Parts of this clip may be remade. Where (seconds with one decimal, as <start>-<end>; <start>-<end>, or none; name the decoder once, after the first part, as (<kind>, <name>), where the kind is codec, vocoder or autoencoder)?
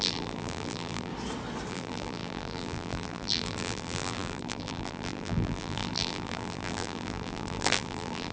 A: 0.0-1.1 (vocoder, BigVGAN v2); 1.7-8.3